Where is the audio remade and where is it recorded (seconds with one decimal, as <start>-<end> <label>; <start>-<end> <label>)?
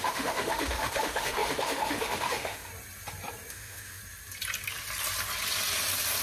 0.0-2.7 remade; 2.7-3.5 recorded; 3.5-4.0 remade; 4.0-6.2 recorded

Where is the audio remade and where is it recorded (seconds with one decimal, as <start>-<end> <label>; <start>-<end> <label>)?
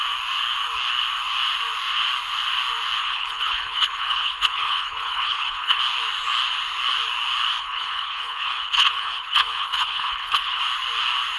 0.0-3.0 recorded; 3.0-5.8 remade; 5.8-7.6 recorded; 7.6-10.6 remade; 10.6-11.4 recorded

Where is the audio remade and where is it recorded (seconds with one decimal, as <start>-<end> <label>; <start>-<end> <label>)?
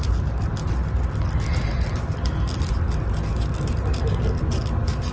0.0-5.1 recorded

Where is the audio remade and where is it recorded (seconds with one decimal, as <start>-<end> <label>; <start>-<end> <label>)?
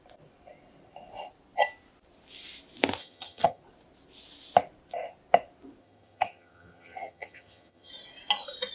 0.0-3.0 recorded; 3.0-3.6 remade; 3.6-5.8 recorded; 5.8-7.9 remade; 7.9-8.7 recorded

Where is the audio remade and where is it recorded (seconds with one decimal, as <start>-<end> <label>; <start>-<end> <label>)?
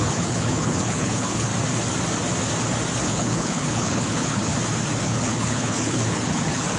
0.0-1.5 remade; 1.5-3.0 recorded; 3.0-4.5 remade; 4.5-5.0 recorded; 5.0-6.8 remade